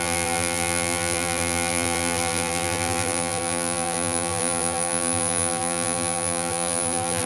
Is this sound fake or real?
fake